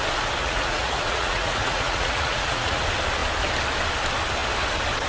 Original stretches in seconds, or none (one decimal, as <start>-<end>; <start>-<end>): 0.0-0.4; 2.8-5.1